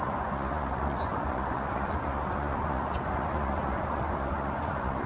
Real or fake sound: fake